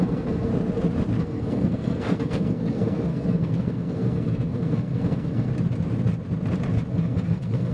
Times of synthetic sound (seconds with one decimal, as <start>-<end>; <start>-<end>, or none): 0.0-0.5; 1.2-5.5; 6.9-7.7